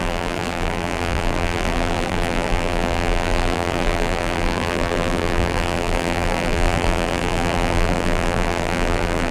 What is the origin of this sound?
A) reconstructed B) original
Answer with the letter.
A